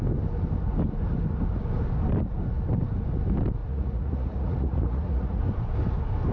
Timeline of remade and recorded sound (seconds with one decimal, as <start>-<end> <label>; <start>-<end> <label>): 0.0-3.6 recorded; 3.6-5.4 remade; 5.4-6.3 recorded